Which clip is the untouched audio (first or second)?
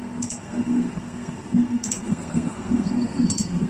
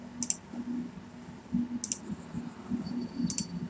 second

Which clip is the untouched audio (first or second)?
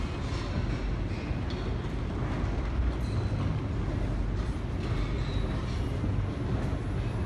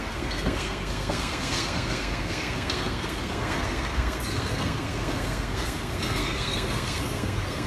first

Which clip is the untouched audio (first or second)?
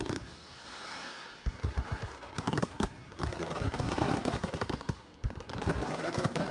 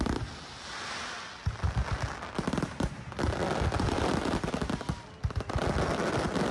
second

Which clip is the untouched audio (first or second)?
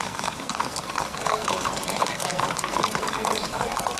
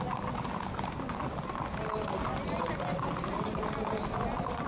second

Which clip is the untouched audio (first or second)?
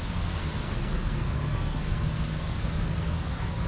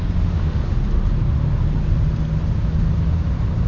second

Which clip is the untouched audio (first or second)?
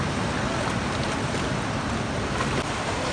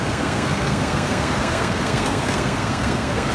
first